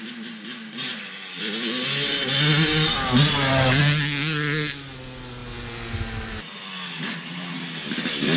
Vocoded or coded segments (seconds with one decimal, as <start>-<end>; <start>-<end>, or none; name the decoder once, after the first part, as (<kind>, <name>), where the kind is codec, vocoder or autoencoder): none